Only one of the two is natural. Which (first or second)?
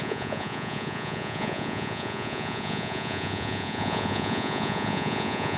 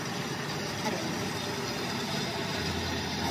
second